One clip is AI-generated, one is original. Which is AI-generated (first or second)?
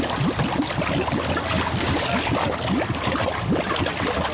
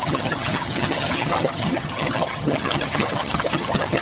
second